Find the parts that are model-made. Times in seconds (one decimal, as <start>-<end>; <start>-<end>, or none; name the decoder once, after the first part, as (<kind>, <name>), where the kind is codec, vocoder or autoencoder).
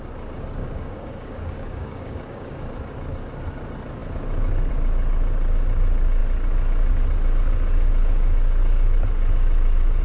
0.6-2.5 (codec, DAC)